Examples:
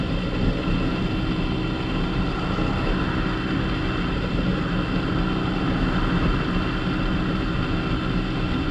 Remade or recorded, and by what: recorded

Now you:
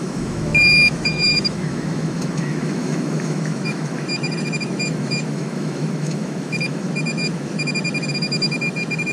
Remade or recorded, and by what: remade, autoencoder, DAC-VAE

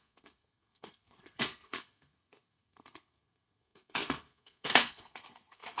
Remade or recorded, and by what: remade, codec, SNAC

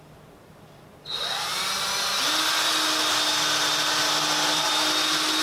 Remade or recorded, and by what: recorded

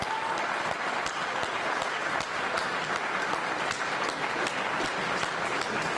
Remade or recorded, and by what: recorded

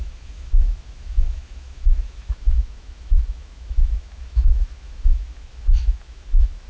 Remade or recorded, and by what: remade, autoencoder, DAC-VAE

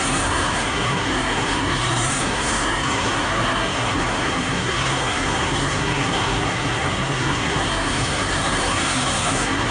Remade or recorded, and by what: remade, codec, SNAC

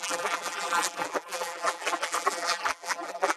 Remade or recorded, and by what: remade, vocoder, BigVGAN v2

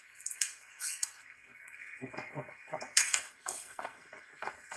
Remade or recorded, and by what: remade, codec, SNAC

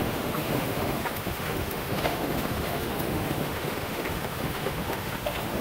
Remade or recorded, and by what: remade, autoencoder, DAC-VAE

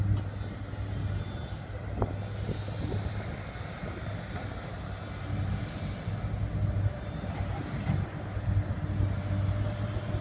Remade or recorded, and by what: recorded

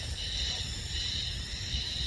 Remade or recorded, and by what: recorded